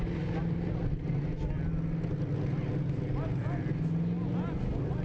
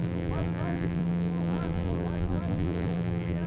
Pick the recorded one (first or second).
first